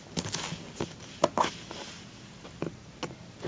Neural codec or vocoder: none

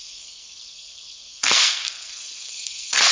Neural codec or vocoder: codec, SNAC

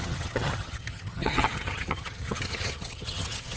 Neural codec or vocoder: vocoder, HiFi-GAN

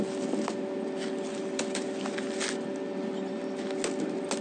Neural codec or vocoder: none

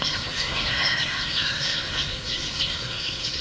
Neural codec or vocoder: codec, SNAC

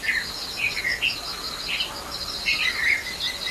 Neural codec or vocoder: none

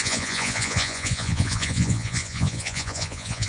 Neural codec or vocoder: vocoder, Vocos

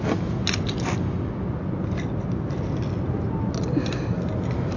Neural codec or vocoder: none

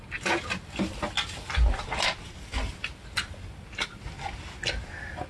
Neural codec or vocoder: none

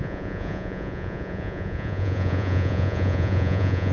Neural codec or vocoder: vocoder, Vocos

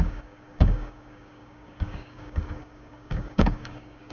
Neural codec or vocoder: codec, DAC